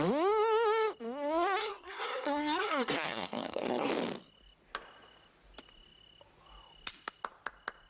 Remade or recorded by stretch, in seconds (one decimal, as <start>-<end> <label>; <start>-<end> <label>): 0.0-1.6 recorded; 1.6-3.9 remade; 3.9-7.9 recorded